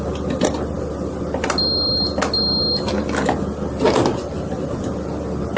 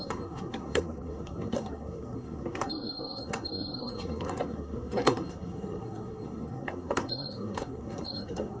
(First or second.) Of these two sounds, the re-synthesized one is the second